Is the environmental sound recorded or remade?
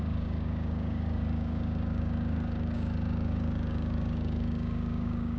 remade